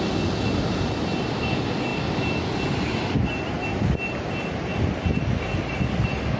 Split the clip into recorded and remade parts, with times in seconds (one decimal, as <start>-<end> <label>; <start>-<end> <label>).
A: 0.0-6.4 recorded

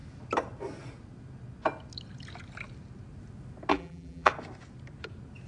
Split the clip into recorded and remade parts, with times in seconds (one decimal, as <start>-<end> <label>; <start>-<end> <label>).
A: 0.0-3.7 recorded; 3.7-4.3 remade; 4.3-5.5 recorded

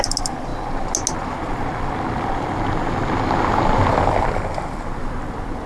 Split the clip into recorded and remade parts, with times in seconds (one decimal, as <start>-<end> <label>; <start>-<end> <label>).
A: 0.0-5.7 recorded

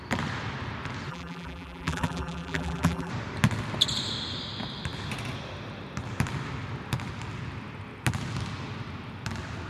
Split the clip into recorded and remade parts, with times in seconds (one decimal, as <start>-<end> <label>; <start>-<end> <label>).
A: 0.0-1.1 recorded; 1.1-3.1 remade; 3.1-9.7 recorded